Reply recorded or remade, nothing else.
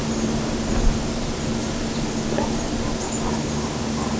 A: recorded